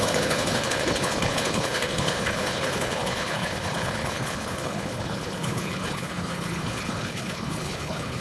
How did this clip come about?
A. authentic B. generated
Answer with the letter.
B